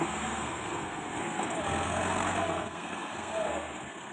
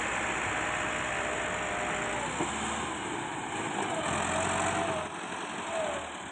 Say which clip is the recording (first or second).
second